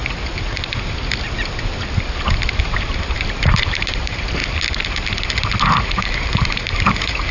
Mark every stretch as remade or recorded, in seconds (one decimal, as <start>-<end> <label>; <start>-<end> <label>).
0.0-2.6 recorded; 2.6-4.4 remade; 4.4-5.9 recorded; 5.9-7.3 remade